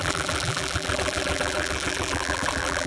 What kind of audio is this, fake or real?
fake